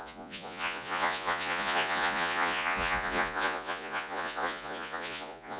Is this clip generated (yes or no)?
yes